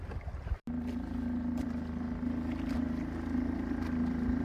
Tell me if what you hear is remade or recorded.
recorded